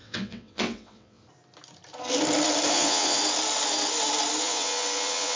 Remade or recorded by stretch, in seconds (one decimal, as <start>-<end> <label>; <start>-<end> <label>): 0.0-1.2 remade; 1.2-2.7 recorded; 2.7-3.2 remade; 3.2-4.4 recorded; 4.4-5.4 remade